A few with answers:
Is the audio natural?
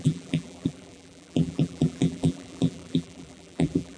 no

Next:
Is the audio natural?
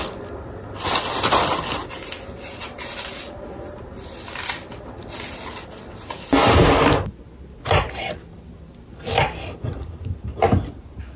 yes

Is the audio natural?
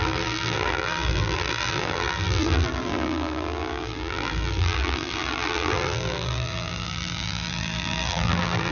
no